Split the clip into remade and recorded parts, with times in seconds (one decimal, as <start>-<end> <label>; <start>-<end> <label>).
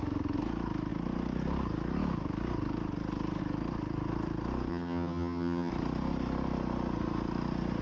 0.0-4.7 recorded; 4.7-5.7 remade; 5.7-7.8 recorded